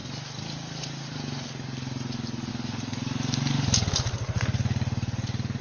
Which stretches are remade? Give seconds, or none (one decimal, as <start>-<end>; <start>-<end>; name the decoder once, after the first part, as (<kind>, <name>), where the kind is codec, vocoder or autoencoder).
none